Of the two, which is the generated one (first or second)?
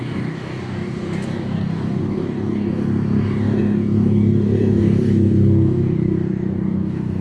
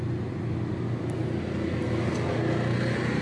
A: first